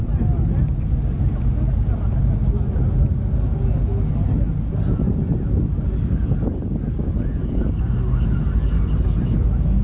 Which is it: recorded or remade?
recorded